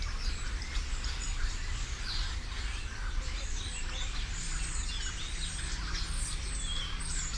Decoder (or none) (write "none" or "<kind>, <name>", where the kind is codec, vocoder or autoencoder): none